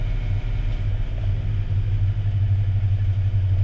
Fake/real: real